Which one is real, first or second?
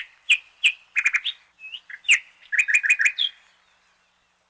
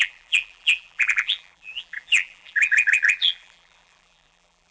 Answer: first